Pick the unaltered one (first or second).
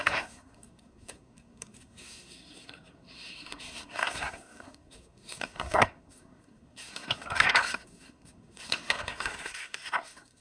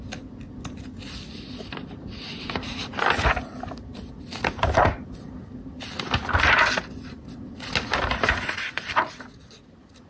second